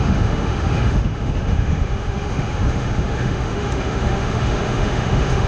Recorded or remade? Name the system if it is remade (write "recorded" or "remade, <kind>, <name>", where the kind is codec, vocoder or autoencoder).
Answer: remade, autoencoder, DAC-VAE